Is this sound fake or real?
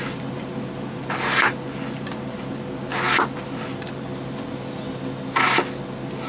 real